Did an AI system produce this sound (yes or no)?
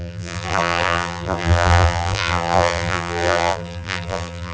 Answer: yes